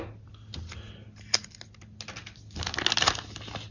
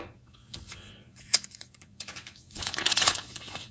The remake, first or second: second